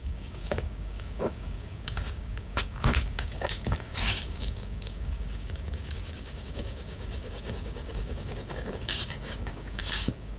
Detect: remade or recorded remade